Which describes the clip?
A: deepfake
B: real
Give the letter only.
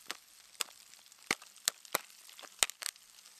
B